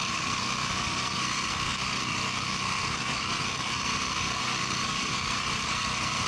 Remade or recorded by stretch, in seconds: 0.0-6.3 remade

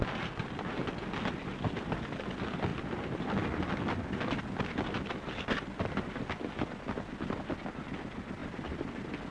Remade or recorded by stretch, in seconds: 0.0-8.4 recorded; 8.4-9.3 remade

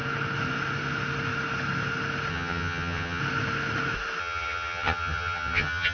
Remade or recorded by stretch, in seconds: 0.0-2.3 recorded; 2.3-3.2 remade; 3.2-4.2 recorded; 4.2-5.9 remade

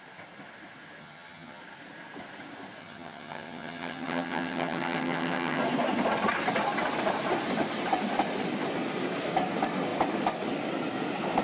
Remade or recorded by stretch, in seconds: 0.0-1.0 recorded; 1.0-1.6 remade; 1.6-2.8 recorded; 2.8-5.6 remade; 5.6-11.4 recorded

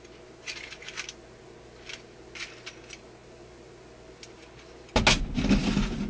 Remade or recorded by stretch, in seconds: 0.0-6.1 recorded